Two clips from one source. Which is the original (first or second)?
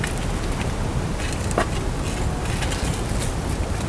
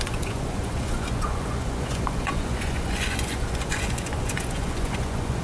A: first